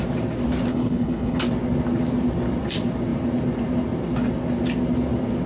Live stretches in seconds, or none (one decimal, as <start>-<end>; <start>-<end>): 0.0-0.7; 1.4-5.5